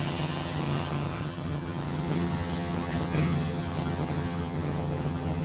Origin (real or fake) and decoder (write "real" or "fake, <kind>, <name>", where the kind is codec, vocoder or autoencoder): fake, vocoder, HiFi-GAN